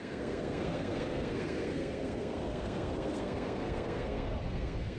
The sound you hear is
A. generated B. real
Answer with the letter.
A